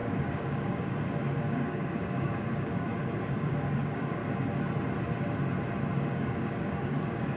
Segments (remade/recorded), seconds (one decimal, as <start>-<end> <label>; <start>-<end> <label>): 0.0-4.2 remade; 4.2-6.1 recorded; 6.1-7.4 remade